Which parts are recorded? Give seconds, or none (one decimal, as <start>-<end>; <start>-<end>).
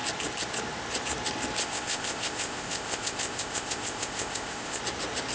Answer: 0.0-1.6; 4.8-5.3